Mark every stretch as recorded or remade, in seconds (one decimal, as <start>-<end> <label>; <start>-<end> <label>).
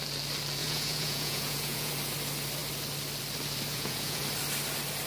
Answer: 0.0-0.6 recorded; 0.6-1.9 remade; 1.9-3.7 recorded; 3.7-4.2 remade; 4.2-5.1 recorded